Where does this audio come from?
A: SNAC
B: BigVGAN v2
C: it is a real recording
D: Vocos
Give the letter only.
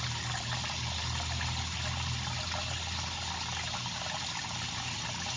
C